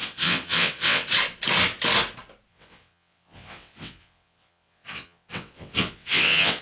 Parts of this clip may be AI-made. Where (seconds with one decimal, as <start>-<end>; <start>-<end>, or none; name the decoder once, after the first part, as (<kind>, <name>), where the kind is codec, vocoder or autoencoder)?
0.0-1.1 (vocoder, WaveNeXt); 2.5-6.6